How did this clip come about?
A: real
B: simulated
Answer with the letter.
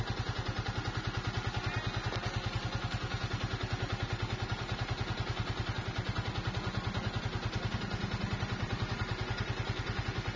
A